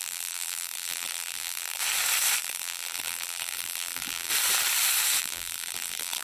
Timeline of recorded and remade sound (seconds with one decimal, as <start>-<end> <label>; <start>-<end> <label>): 0.0-1.8 remade; 1.8-2.4 recorded; 2.4-4.3 remade; 4.3-5.2 recorded; 5.2-6.2 remade